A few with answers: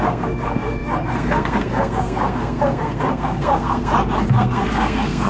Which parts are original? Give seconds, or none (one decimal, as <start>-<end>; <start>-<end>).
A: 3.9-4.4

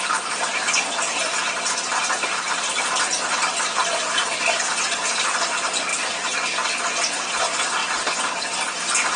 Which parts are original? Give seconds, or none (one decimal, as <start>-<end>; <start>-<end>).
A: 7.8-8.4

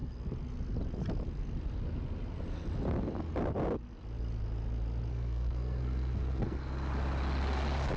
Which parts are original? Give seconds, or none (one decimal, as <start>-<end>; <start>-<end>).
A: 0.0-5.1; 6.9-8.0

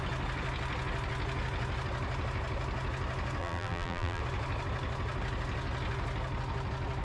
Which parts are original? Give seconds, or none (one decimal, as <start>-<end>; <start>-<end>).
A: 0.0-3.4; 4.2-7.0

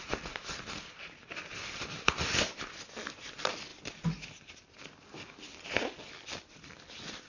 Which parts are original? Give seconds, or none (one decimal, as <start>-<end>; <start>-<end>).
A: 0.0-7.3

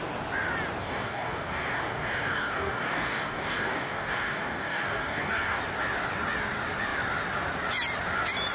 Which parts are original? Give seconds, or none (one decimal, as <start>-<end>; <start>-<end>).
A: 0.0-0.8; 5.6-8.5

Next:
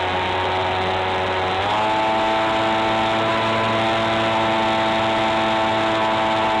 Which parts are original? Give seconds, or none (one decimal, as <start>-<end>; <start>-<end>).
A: 0.0-6.6